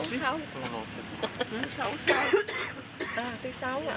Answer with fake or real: real